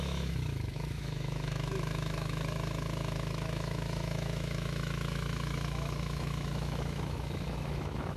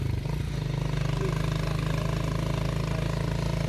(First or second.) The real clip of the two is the second